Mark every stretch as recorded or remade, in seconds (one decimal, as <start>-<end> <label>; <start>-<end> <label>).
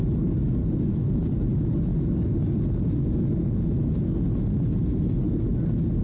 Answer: 0.0-0.6 recorded; 0.6-1.3 remade; 1.3-6.0 recorded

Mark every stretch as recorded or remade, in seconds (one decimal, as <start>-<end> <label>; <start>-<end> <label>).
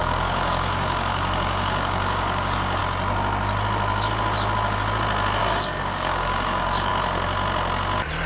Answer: 0.0-2.8 remade; 2.8-5.4 recorded; 5.4-6.9 remade; 6.9-8.3 recorded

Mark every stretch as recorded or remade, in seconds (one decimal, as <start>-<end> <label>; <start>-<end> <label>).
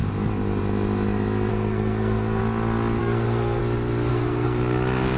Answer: 0.0-1.5 recorded; 1.5-2.4 remade; 2.4-3.0 recorded; 3.0-3.6 remade; 3.6-4.1 recorded; 4.1-4.6 remade; 4.6-5.2 recorded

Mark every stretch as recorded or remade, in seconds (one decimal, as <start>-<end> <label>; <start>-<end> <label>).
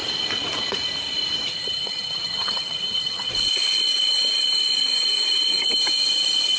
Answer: 0.0-1.5 recorded; 1.5-3.3 remade; 3.3-6.6 recorded